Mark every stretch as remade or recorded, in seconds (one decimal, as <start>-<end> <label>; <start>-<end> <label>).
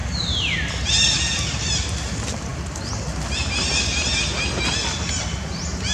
0.0-0.7 recorded; 0.7-2.5 remade; 2.5-5.5 recorded; 5.5-5.9 remade